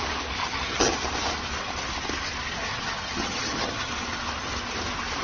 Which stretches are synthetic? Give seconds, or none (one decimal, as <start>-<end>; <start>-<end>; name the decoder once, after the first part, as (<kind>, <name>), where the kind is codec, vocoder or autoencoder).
0.4-0.9 (vocoder, HiFi-GAN); 2.7-3.9